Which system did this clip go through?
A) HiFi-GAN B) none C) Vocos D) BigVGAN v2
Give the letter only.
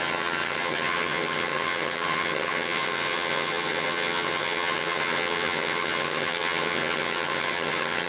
A